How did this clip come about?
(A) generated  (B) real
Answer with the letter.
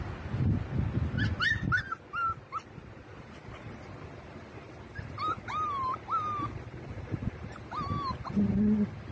B